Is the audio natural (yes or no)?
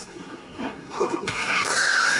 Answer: no